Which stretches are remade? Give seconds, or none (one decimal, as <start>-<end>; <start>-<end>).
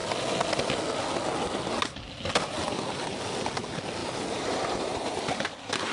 4.0-5.2